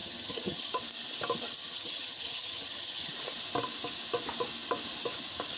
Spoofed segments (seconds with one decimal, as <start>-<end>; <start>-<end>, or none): 0.0-0.7; 1.6-3.1